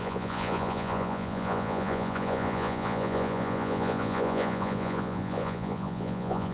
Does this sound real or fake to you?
fake